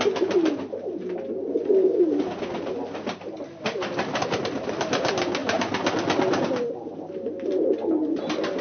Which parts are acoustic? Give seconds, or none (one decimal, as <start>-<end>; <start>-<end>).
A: 0.0-5.4; 6.9-8.6